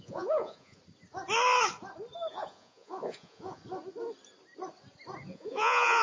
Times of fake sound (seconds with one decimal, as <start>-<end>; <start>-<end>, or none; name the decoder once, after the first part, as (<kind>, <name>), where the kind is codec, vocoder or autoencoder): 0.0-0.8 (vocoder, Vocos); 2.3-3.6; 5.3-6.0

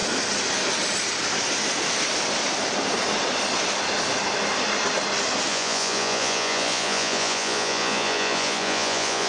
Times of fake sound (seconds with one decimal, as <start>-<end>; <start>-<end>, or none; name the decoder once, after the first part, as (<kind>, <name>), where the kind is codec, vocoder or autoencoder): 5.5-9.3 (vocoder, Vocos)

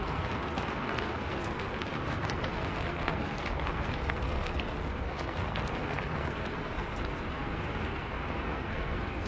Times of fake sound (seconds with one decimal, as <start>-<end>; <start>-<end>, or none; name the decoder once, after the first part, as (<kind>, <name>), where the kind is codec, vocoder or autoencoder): 0.0-9.3 (codec, SNAC)